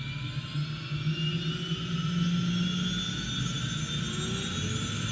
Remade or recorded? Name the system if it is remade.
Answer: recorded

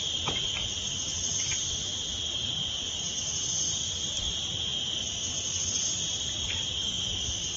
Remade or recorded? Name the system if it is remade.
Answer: recorded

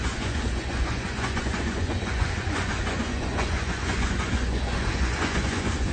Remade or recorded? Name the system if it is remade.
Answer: remade, vocoder, Vocos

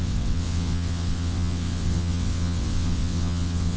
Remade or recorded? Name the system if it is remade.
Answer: remade, vocoder, WaveNeXt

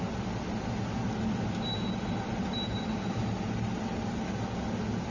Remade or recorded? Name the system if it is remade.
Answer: recorded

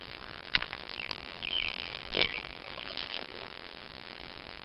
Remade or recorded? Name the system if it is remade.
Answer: remade, vocoder, BigVGAN v2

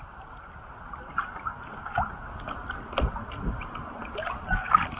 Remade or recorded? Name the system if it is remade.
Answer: recorded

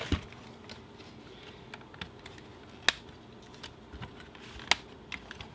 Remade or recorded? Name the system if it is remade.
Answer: recorded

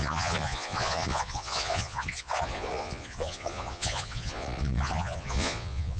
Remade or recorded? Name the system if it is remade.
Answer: remade, vocoder, Vocos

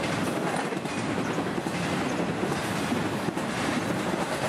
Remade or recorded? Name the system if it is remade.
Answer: recorded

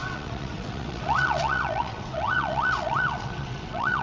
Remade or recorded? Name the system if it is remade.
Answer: remade, vocoder, WaveNeXt